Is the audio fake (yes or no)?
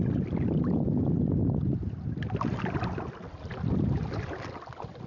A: no